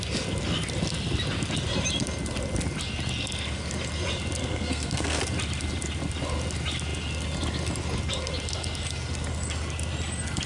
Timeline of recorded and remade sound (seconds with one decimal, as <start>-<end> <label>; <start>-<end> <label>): 0.0-4.4 recorded; 4.4-5.2 remade; 5.2-10.5 recorded